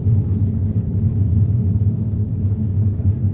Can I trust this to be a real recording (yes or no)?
no